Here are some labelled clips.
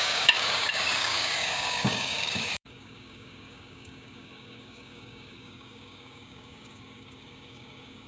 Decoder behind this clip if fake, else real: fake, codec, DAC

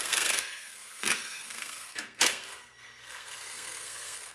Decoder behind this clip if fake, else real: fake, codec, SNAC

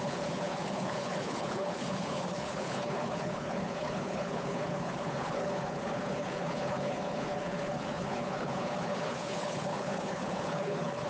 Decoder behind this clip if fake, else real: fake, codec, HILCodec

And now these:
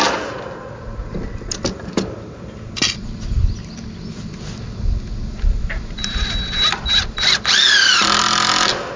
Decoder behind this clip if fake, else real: real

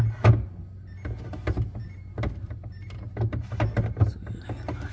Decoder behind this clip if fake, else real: real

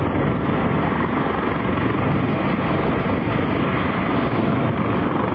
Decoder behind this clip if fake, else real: real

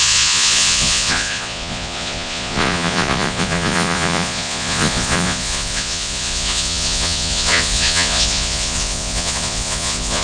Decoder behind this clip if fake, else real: fake, vocoder, Vocos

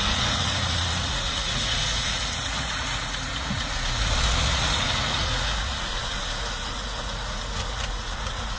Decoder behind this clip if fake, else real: fake, vocoder, Vocos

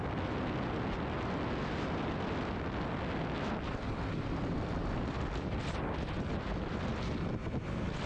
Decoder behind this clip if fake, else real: real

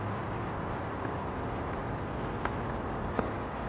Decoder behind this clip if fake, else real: real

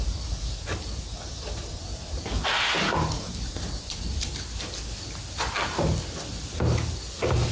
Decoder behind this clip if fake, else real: real